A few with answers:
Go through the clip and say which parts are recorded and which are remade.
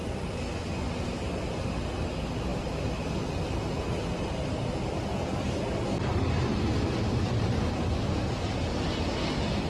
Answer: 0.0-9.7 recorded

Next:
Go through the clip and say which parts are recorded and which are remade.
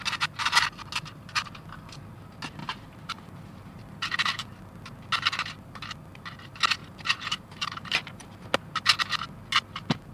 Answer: 0.0-2.6 recorded; 2.6-4.6 remade; 4.6-6.8 recorded; 6.8-8.4 remade; 8.4-10.1 recorded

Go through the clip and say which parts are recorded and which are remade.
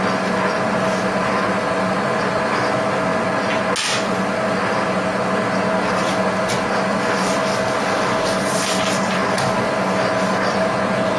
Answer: 0.0-11.2 recorded